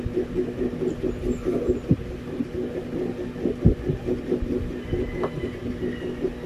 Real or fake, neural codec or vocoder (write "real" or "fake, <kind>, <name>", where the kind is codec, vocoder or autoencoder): real